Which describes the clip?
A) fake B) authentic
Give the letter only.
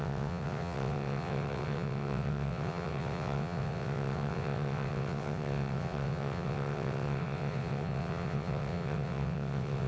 A